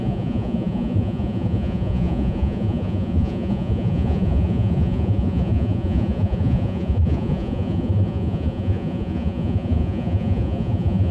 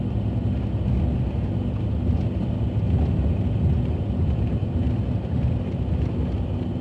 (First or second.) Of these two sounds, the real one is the second